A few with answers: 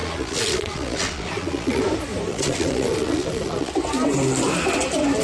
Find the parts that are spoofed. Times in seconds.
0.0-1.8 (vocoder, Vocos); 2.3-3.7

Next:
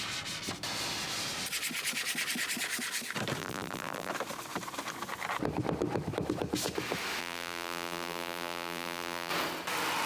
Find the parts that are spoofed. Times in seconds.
3.4-4.1 (vocoder, BigVGAN v2); 7.2-9.3

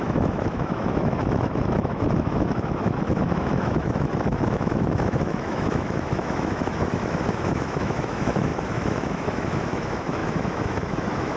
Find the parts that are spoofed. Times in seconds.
0.0-11.4 (autoencoder, DAC-VAE)

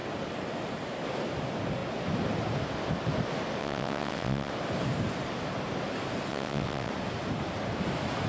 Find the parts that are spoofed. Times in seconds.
3.6-4.5 (vocoder, WaveNeXt); 6.3-6.9

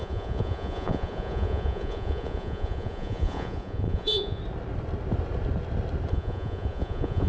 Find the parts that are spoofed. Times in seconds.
0.0-4.4 (vocoder, Vocos); 6.1-7.3

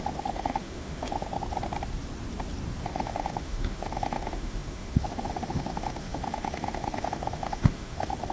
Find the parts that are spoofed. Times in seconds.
0.0-1.3 (autoencoder, DAC-VAE); 2.8-8.3

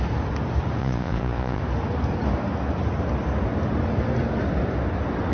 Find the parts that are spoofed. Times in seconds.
0.8-1.6 (vocoder, Vocos)

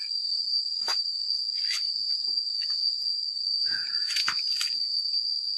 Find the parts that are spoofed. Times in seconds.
0.0-1.1 (vocoder, BigVGAN v2)